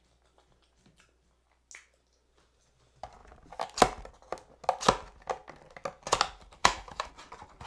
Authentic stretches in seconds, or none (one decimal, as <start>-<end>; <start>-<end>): 0.0-6.6; 7.1-7.7

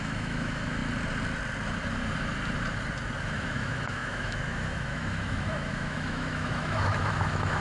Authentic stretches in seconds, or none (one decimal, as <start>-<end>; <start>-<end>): 0.8-3.2

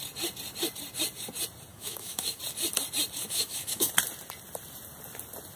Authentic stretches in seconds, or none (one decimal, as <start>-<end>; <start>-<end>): 0.0-1.7; 2.4-3.2; 3.9-5.6

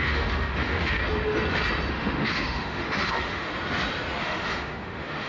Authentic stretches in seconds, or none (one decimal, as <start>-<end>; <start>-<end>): 1.0-1.9; 3.5-4.2